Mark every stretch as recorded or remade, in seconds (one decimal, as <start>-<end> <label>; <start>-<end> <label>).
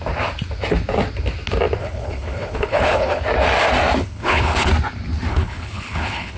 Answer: 0.0-1.8 recorded; 1.8-3.2 remade; 3.2-4.0 recorded; 4.0-4.7 remade; 4.7-5.3 recorded; 5.3-6.4 remade